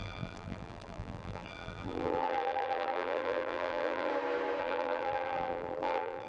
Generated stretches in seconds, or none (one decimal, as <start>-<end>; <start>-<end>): 0.0-4.1; 4.6-6.3